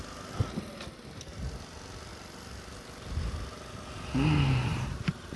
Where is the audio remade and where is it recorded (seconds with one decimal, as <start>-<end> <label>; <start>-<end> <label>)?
0.0-5.4 recorded